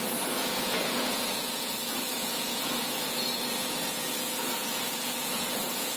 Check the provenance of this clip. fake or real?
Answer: fake